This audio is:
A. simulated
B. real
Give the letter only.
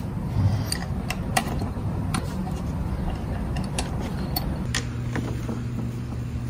B